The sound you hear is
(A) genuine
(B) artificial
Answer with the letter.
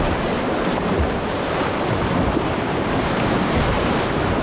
B